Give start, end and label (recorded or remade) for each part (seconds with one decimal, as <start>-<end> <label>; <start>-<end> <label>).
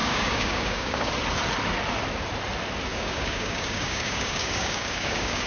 0.0-1.1 remade; 1.1-2.9 recorded; 2.9-5.5 remade